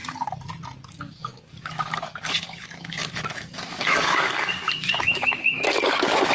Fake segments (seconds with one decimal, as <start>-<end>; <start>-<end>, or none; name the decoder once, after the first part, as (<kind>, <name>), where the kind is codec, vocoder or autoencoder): 0.9-6.3 (codec, DAC)